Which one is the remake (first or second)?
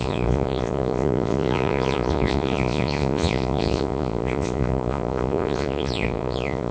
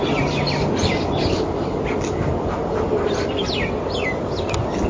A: first